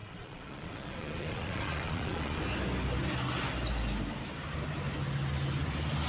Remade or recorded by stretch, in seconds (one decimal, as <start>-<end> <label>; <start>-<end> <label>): 0.0-2.4 remade; 2.4-6.1 recorded